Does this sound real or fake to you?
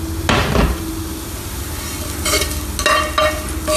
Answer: real